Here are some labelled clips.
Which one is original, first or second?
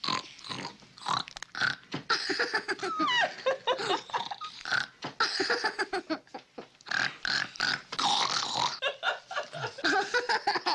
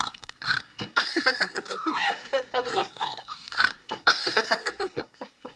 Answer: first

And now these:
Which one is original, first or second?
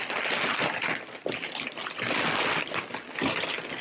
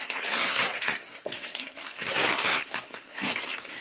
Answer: first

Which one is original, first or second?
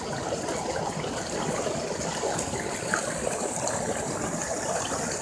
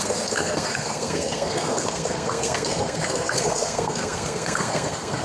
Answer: first